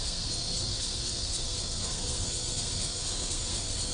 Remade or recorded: remade